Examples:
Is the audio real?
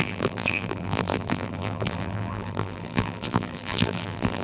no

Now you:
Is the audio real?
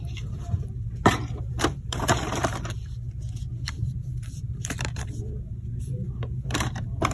no